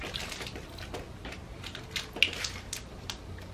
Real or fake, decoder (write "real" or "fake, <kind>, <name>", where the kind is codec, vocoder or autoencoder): real